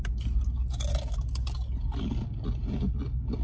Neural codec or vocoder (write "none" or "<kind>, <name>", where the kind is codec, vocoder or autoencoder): none